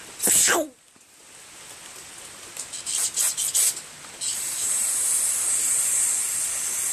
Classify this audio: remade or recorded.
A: recorded